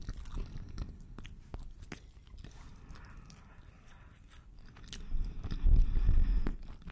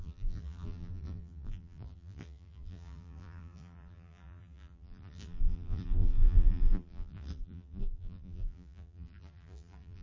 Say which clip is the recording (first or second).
first